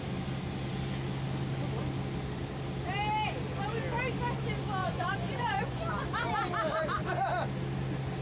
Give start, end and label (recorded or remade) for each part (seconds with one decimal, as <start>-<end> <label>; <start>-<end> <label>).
0.0-4.8 recorded; 4.8-5.8 remade; 5.8-8.2 recorded